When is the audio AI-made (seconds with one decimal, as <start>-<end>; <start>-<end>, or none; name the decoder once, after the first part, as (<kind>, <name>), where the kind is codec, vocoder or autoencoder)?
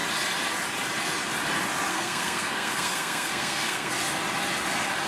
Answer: 1.9-3.9 (codec, SNAC)